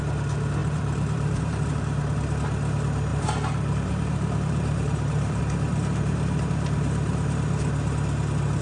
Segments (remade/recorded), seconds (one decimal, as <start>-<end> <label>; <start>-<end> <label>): 0.0-0.6 recorded; 0.6-2.0 remade; 2.0-3.1 recorded; 3.1-5.4 remade; 5.4-8.6 recorded